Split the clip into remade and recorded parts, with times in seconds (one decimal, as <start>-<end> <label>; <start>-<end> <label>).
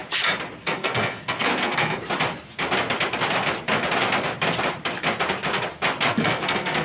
0.0-0.6 recorded; 0.6-2.0 remade; 2.0-6.1 recorded; 6.1-6.8 remade